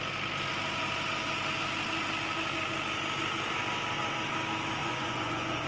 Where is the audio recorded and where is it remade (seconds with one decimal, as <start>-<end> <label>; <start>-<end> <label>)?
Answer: 0.0-4.8 recorded; 4.8-5.7 remade

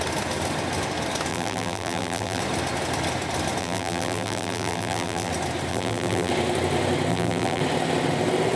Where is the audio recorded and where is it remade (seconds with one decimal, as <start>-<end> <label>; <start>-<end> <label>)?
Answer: 0.0-1.3 recorded; 1.3-2.4 remade; 2.4-3.6 recorded; 3.6-5.3 remade; 5.3-5.7 recorded; 5.7-6.3 remade; 6.3-7.1 recorded; 7.1-7.6 remade; 7.6-8.6 recorded

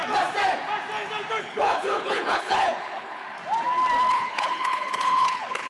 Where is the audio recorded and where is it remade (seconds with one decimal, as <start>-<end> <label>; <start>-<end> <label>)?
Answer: 0.0-1.4 recorded; 1.4-3.2 remade; 3.2-4.1 recorded; 4.1-5.7 remade

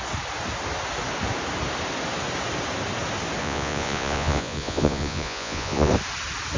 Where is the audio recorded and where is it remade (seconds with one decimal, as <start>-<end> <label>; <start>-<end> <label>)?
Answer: 0.0-3.4 recorded; 3.4-5.9 remade; 5.9-6.6 recorded